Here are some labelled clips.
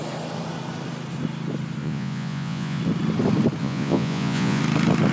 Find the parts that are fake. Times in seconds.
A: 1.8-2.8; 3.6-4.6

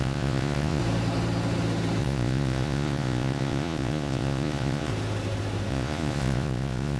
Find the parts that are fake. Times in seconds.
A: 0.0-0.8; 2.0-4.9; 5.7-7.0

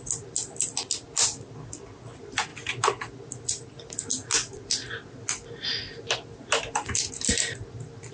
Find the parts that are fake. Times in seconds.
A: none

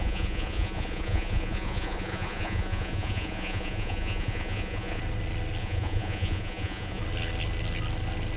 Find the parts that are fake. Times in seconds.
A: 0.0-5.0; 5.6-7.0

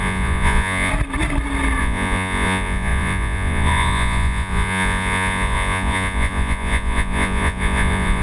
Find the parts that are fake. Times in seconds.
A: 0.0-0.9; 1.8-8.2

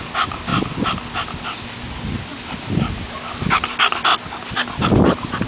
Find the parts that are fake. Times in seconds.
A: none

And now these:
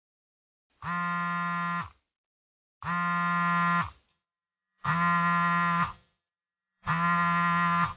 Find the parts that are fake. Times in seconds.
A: 4.1-8.0